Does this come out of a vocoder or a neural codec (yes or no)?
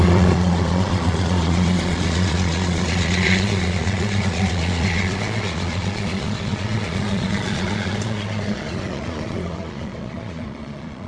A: yes